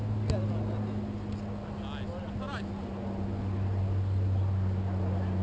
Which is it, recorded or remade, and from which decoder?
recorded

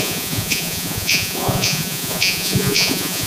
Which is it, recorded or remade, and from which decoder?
remade, vocoder, Vocos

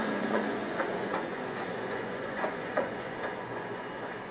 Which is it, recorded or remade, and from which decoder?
remade, vocoder, Vocos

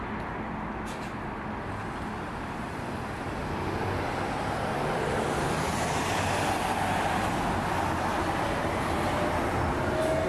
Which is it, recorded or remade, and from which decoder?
recorded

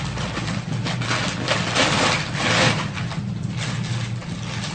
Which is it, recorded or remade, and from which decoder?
recorded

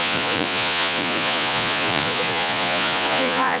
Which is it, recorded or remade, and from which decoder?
remade, vocoder, Vocos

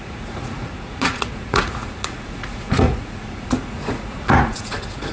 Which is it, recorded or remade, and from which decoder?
remade, vocoder, Vocos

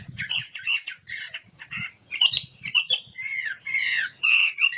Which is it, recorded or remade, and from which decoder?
remade, vocoder, Vocos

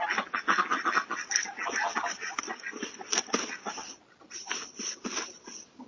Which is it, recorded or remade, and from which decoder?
recorded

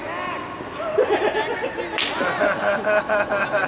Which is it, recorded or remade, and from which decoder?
recorded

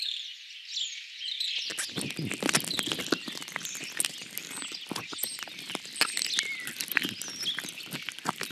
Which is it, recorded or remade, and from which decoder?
recorded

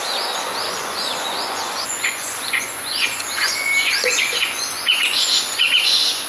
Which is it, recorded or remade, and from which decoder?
remade, vocoder, Vocos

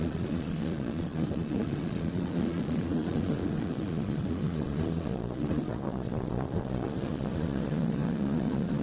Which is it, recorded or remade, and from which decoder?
remade, vocoder, Vocos